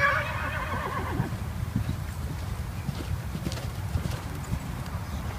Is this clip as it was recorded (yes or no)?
no